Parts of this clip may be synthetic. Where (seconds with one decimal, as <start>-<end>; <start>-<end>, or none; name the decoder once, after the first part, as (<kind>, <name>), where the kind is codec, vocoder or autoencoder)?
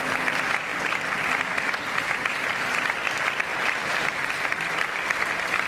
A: 3.5-4.3 (vocoder, BigVGAN v2)